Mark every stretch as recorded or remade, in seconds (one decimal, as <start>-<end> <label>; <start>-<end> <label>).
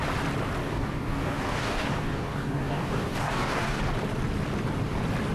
0.0-0.6 recorded; 0.6-3.8 remade; 3.8-5.3 recorded